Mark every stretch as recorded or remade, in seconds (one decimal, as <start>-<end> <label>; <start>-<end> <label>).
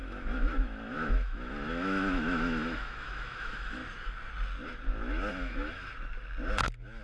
0.0-3.8 remade; 3.8-5.3 recorded; 5.3-5.9 remade; 5.9-7.0 recorded